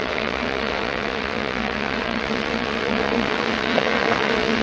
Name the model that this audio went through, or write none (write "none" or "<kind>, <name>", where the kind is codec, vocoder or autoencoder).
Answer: vocoder, WaveNeXt